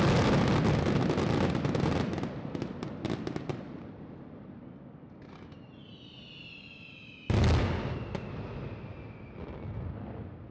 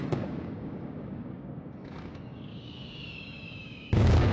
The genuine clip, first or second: first